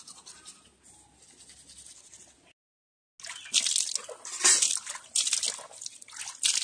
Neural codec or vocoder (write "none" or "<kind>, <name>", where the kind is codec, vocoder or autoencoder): none